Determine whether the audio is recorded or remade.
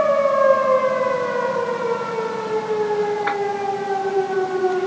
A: recorded